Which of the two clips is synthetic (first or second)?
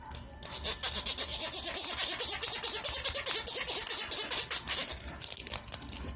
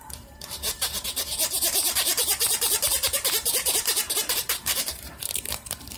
second